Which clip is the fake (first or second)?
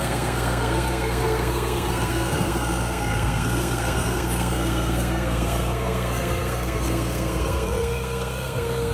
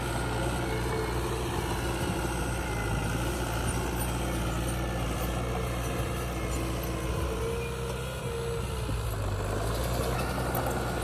first